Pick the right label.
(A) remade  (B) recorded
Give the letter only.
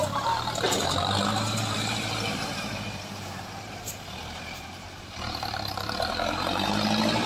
A